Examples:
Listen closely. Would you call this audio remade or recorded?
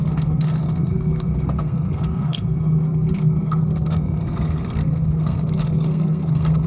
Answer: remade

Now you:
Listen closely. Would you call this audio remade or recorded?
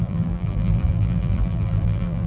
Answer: remade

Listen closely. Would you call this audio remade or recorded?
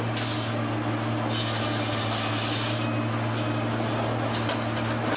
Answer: recorded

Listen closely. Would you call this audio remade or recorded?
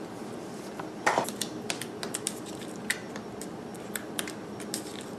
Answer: recorded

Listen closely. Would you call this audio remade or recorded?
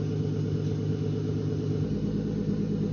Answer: recorded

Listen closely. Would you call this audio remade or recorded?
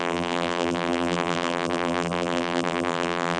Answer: remade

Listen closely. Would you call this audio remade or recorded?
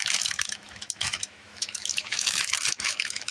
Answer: remade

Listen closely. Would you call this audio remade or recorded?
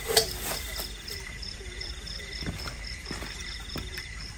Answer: remade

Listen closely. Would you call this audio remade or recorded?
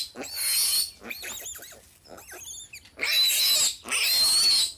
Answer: recorded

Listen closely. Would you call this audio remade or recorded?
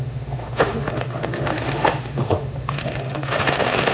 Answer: remade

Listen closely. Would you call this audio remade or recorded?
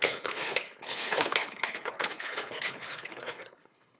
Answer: remade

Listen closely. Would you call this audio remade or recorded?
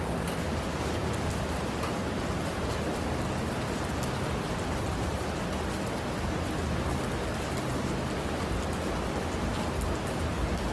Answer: recorded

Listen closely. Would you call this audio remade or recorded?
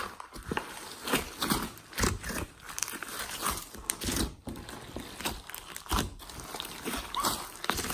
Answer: remade